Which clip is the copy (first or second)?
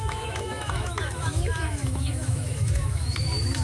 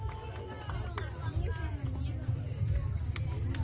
first